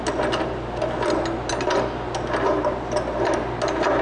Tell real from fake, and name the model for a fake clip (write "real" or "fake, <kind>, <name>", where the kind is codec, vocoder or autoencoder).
real